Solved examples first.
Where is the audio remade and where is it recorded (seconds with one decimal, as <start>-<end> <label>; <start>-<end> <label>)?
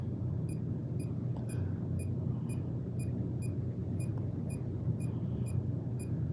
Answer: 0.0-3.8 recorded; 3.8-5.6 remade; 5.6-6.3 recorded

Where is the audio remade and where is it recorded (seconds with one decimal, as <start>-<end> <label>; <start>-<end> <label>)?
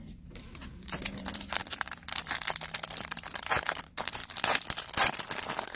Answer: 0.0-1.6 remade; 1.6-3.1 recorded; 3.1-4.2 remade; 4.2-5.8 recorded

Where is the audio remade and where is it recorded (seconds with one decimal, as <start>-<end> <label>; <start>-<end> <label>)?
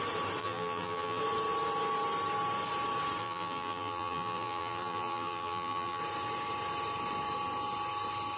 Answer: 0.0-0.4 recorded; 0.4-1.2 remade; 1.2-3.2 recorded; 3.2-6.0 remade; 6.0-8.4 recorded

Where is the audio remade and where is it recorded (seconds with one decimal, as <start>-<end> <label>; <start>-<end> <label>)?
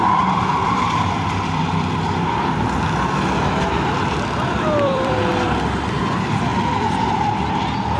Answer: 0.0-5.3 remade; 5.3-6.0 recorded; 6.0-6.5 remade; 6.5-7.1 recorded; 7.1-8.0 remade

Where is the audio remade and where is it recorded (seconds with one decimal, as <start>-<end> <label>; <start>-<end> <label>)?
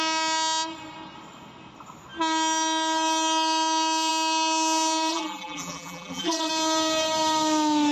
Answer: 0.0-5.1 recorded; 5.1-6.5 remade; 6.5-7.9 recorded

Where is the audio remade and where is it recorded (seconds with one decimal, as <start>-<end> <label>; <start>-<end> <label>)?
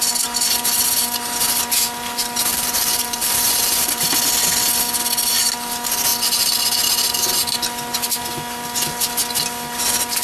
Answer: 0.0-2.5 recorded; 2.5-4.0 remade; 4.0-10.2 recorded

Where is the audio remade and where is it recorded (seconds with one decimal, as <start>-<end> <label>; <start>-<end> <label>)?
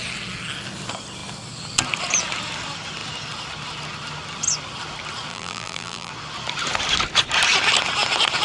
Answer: 0.0-5.3 recorded; 5.3-6.1 remade; 6.1-8.4 recorded